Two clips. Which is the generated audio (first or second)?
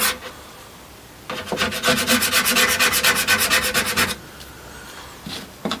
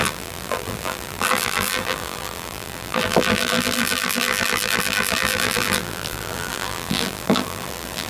second